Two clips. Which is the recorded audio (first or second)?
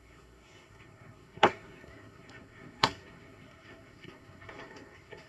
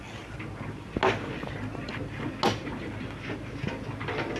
second